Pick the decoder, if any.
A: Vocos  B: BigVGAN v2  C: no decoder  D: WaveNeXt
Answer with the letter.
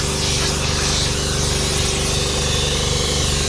C